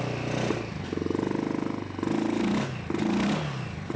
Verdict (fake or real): real